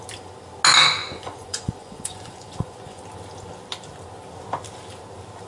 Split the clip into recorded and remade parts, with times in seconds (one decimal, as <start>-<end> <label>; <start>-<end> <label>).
0.0-1.0 recorded; 1.0-3.0 remade; 3.0-5.5 recorded